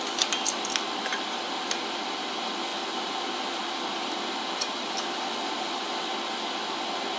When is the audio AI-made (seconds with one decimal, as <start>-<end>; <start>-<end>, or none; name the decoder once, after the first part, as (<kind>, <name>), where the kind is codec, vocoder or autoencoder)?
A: 2.7-6.3 (vocoder, BigVGAN v2)